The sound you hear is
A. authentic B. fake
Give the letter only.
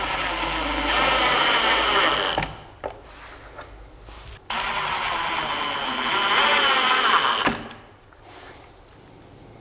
A